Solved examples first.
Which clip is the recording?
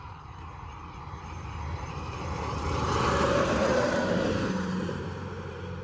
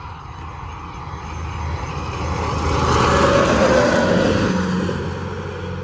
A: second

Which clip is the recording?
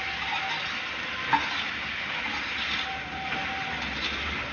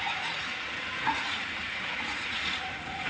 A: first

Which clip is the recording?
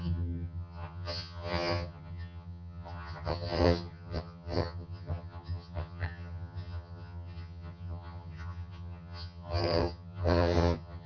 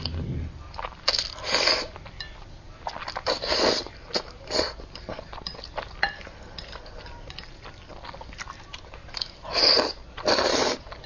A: second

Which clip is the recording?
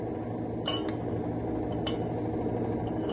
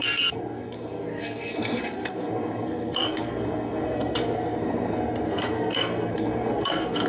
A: first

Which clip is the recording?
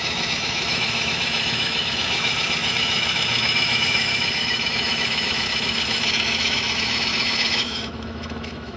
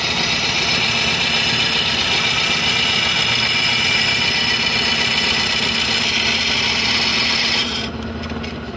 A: second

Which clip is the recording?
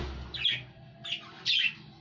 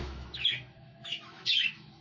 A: first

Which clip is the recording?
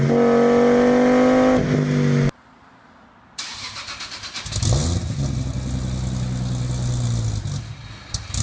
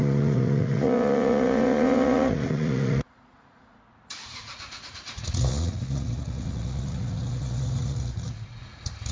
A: first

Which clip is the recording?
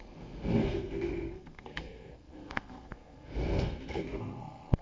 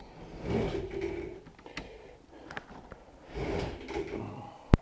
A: second